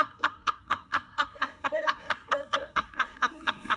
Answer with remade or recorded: remade